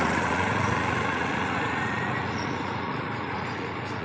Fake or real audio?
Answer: fake